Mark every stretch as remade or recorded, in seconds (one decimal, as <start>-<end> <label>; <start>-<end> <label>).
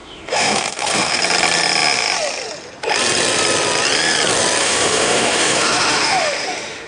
0.0-1.2 remade; 1.2-4.6 recorded; 4.6-6.9 remade